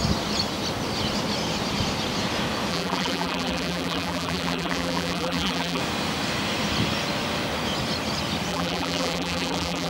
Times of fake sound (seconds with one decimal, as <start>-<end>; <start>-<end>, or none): 2.7-5.8; 8.5-9.9